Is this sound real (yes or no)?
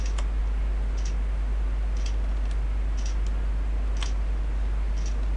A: yes